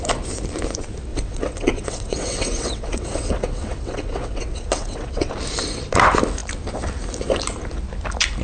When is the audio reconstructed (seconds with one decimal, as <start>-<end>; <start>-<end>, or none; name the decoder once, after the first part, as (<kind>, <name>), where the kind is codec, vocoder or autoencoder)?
1.1-5.3 (vocoder, WaveNeXt)